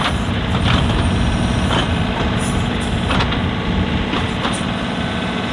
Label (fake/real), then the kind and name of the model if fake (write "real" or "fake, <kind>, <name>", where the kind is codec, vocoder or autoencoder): real